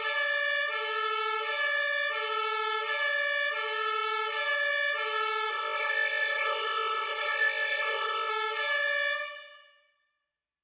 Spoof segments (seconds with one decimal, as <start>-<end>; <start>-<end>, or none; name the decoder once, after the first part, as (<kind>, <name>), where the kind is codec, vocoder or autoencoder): 5.5-8.3 (codec, ZipCodec)